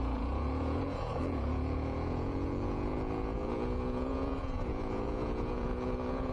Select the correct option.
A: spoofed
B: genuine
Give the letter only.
A